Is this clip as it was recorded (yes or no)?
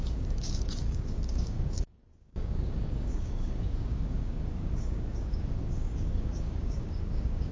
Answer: no